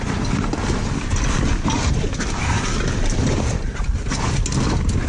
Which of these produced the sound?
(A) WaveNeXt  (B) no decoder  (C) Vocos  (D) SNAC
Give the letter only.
B